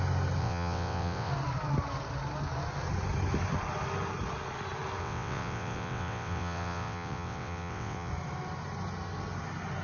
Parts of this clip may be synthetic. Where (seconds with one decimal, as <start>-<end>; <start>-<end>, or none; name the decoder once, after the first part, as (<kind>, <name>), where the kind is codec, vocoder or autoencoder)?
0.4-1.3 (vocoder, WaveNeXt); 5.0-8.1